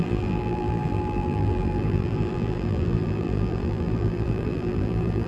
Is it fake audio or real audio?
fake